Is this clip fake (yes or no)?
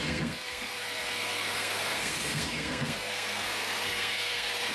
yes